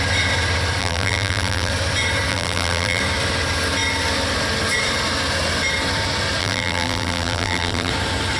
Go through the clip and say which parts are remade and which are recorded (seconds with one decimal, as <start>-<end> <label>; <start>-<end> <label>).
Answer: 0.0-0.8 recorded; 0.8-1.7 remade; 1.7-2.3 recorded; 2.3-3.0 remade; 3.0-6.4 recorded; 6.4-7.9 remade; 7.9-8.4 recorded

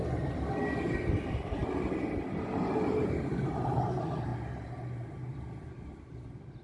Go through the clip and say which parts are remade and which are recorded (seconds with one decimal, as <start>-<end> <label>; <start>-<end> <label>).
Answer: 0.0-6.6 recorded

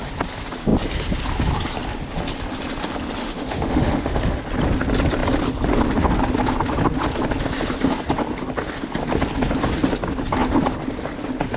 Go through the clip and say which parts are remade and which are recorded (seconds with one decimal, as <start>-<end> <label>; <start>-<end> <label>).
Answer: 0.0-3.2 recorded; 3.2-4.4 remade; 4.4-11.6 recorded

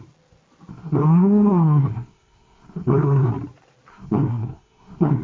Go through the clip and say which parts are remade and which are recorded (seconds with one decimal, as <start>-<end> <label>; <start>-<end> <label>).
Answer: 0.0-0.7 recorded; 0.7-3.3 remade; 3.3-3.9 recorded; 3.9-5.2 remade

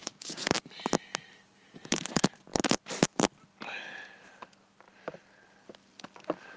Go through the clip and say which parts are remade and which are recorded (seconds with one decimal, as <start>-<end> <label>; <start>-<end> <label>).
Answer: 0.0-0.7 remade; 0.7-6.6 recorded